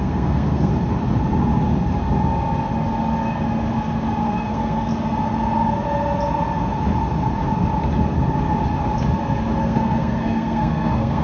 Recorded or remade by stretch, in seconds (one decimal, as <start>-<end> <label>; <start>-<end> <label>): 0.0-0.7 remade; 0.7-4.2 recorded; 4.2-4.9 remade; 4.9-9.6 recorded; 9.6-11.2 remade